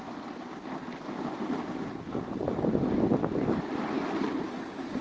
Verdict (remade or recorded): recorded